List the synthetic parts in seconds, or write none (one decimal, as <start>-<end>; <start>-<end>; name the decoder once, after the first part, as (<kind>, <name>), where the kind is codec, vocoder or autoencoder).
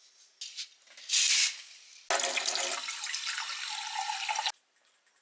none